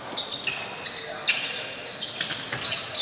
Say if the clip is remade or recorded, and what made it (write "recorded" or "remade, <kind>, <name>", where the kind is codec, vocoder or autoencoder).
recorded